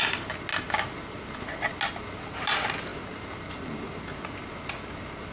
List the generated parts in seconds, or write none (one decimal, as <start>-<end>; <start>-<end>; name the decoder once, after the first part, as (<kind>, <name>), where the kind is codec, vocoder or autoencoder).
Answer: none